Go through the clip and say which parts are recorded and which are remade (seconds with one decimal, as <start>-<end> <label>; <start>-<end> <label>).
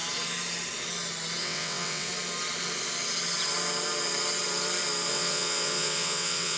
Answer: 0.0-1.4 recorded; 1.4-2.1 remade; 2.1-5.1 recorded; 5.1-6.6 remade